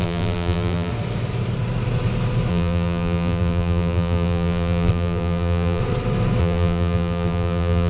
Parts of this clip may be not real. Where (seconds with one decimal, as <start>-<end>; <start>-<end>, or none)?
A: 0.0-0.9; 2.5-5.8; 6.4-7.9